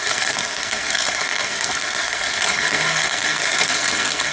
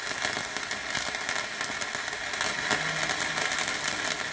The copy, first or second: first